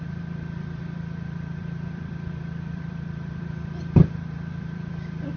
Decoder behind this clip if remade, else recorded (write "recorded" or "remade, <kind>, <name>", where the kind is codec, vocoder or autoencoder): remade, vocoder, BigVGAN v2